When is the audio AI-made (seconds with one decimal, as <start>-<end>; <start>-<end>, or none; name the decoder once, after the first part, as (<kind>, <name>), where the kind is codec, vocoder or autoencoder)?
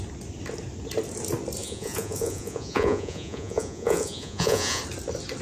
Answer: 1.6-4.8 (vocoder, Vocos)